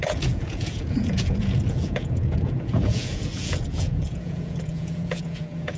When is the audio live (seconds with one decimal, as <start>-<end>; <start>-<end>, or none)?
none